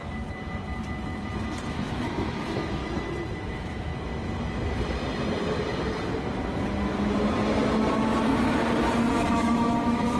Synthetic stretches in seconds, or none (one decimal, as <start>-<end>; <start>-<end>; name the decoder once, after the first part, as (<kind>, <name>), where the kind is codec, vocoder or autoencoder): 1.7-2.8 (autoencoder, DAC-VAE); 3.4-3.9; 9.1-10.2